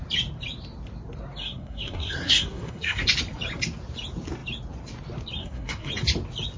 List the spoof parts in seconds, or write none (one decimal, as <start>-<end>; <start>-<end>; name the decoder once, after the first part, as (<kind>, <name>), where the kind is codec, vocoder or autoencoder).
1.4-3.0 (codec, SNAC); 5.4-5.9